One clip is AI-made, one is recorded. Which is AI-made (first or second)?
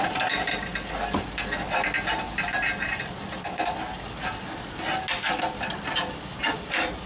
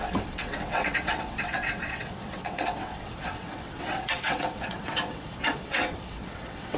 second